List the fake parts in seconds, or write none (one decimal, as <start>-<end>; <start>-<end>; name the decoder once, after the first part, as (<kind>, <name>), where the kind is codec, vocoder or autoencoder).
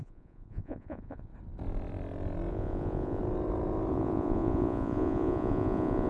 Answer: 0.0-1.3 (vocoder, Vocos); 2.5-3.2; 3.9-6.1